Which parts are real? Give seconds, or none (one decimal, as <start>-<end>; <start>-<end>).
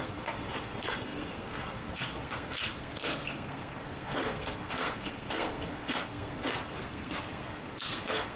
none